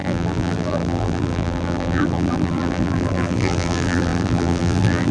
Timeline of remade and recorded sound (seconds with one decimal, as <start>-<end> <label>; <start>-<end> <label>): 0.0-5.1 remade